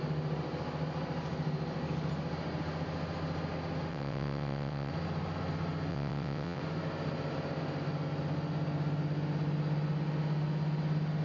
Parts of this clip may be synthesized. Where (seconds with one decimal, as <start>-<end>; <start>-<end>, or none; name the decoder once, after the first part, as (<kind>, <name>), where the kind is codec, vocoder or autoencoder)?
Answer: 3.9-4.9 (vocoder, WaveNeXt); 5.9-6.6